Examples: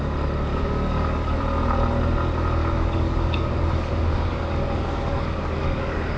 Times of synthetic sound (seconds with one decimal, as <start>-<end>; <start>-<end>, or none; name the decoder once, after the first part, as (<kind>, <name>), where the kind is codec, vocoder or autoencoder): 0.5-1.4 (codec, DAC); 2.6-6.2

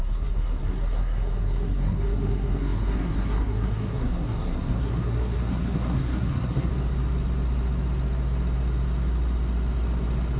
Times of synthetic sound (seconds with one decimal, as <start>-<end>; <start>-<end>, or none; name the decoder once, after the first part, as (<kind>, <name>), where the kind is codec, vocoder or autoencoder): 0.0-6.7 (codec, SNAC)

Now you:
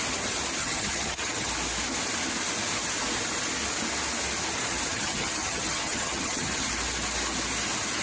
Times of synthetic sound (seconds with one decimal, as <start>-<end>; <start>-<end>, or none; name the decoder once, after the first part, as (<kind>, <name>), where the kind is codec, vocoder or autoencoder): 0.6-1.5 (vocoder, HiFi-GAN); 4.9-6.7

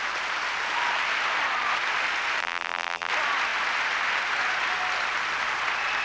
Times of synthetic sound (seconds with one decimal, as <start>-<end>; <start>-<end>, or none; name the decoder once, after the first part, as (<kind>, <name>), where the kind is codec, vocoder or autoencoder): 2.4-3.1 (vocoder, BigVGAN v2)

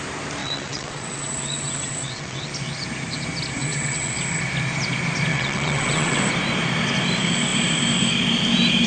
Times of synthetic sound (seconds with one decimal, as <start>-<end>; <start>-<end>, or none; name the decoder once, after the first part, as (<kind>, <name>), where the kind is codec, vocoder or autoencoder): 0.4-2.5 (vocoder, WaveNeXt); 3.6-4.2; 5.3-6.2